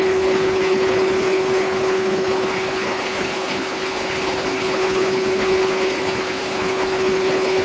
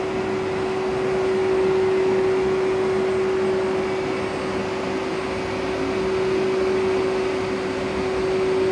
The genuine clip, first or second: second